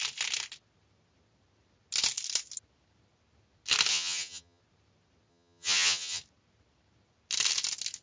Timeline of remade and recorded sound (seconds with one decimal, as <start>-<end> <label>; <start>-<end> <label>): 0.0-3.9 recorded; 3.9-4.6 remade; 4.6-5.3 recorded; 5.3-6.2 remade; 6.2-8.0 recorded